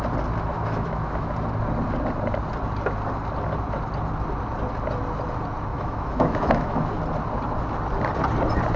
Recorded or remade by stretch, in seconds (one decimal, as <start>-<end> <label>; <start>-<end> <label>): 0.0-0.5 recorded; 0.5-1.3 remade; 1.3-5.7 recorded; 5.7-6.9 remade; 6.9-8.8 recorded